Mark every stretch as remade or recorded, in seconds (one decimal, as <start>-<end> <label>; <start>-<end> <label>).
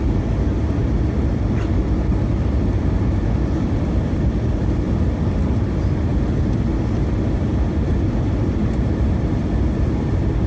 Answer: 0.0-10.5 recorded